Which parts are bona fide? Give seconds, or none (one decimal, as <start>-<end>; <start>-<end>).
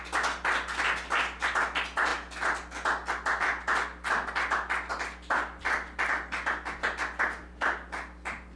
0.0-8.6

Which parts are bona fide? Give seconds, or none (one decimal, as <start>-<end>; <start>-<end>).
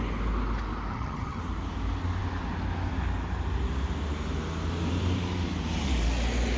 0.0-0.9; 1.4-6.6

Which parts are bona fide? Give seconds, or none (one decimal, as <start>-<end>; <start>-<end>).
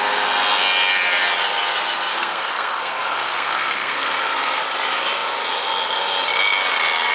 0.0-2.1; 4.6-7.1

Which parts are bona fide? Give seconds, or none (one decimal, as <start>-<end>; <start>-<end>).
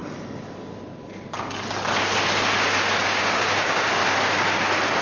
0.0-3.0; 4.0-5.0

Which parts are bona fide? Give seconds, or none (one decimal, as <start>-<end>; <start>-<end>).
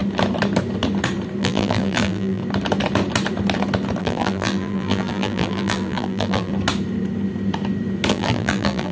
0.0-1.4; 2.4-4.0; 6.5-8.1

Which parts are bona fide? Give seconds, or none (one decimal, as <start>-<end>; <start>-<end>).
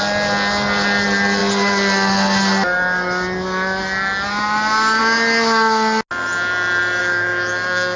0.0-7.0